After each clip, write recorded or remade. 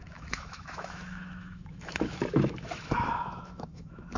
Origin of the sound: remade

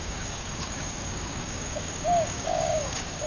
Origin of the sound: remade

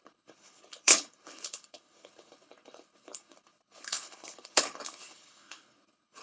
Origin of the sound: remade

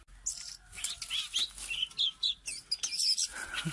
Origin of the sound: recorded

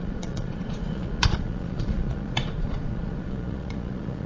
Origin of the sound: remade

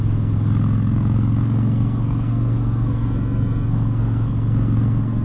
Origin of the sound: remade